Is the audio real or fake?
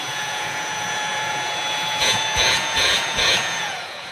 fake